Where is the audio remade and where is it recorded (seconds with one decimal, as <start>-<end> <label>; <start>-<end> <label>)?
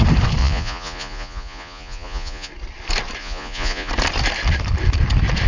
0.0-0.4 recorded; 0.4-2.5 remade; 2.5-3.2 recorded; 3.2-3.9 remade; 3.9-5.5 recorded